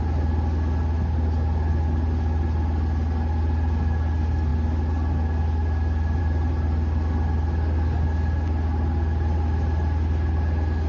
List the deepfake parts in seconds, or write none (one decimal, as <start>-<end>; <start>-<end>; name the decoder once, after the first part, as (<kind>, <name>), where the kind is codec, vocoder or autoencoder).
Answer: none